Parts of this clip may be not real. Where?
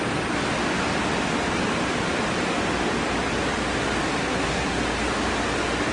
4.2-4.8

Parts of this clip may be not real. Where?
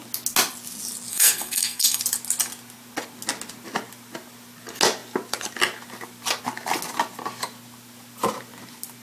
1.1-2.0